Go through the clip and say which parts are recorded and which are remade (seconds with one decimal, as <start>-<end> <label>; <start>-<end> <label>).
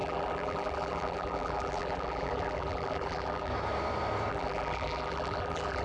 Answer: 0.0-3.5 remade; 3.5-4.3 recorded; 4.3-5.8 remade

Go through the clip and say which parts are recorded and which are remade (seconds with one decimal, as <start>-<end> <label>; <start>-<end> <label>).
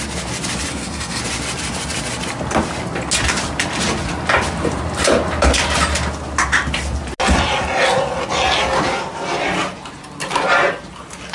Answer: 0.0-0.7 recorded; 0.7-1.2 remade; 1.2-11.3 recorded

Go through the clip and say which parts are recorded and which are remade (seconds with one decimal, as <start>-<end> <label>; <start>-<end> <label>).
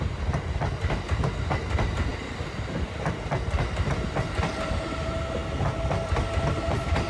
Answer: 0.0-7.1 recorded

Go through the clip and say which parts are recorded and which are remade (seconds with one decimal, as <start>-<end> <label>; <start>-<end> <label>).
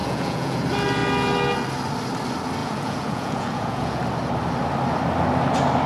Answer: 0.0-0.6 remade; 0.6-2.6 recorded; 2.6-4.0 remade; 4.0-5.9 recorded